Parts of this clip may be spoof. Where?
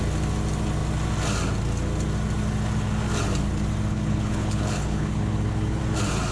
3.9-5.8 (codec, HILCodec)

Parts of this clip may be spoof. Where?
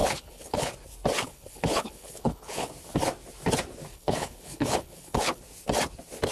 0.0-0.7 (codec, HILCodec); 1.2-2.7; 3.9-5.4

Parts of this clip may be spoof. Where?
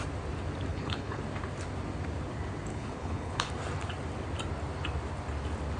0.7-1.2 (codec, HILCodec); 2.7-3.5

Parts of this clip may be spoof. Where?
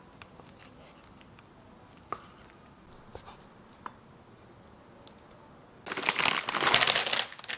none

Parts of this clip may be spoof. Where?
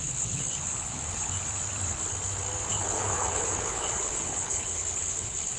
0.0-1.4 (codec, HILCodec); 2.7-5.6